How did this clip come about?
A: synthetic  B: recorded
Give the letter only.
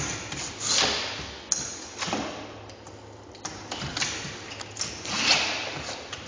B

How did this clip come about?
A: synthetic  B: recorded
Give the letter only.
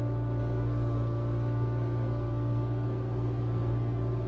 A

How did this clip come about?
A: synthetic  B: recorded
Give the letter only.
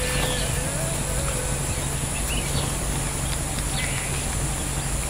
B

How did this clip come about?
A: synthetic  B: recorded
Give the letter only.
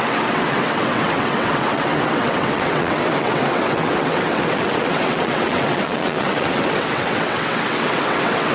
A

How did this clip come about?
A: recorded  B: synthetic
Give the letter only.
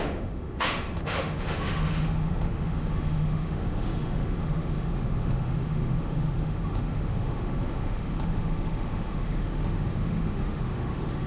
B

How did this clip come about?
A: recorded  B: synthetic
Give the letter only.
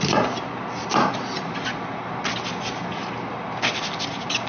A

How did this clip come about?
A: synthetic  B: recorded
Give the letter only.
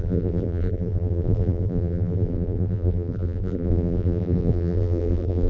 A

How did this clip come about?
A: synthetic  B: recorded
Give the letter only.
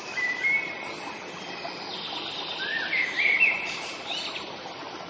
A